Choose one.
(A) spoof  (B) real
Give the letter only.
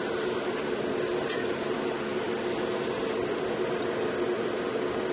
B